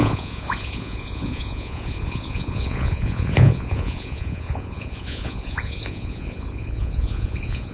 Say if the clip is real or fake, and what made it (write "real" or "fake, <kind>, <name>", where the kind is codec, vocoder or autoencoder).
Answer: fake, vocoder, Vocos